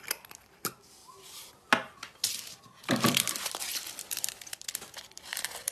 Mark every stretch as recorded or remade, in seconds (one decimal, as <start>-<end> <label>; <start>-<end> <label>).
0.0-1.0 remade; 1.0-2.3 recorded; 2.3-5.7 remade